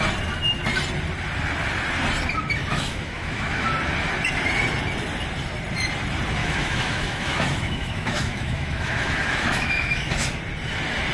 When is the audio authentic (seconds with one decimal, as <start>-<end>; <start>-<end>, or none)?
0.0-2.7; 3.6-6.4; 10.4-11.1